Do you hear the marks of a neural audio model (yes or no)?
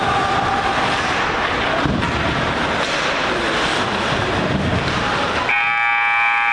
no